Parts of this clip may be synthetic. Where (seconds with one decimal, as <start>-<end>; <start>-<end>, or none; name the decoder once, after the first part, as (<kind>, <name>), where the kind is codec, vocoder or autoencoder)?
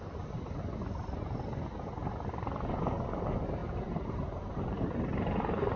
3.6-5.8 (vocoder, BigVGAN v2)